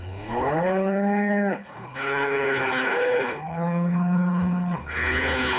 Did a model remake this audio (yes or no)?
yes